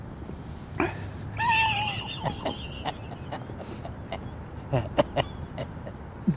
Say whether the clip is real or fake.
real